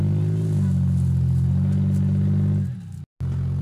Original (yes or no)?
yes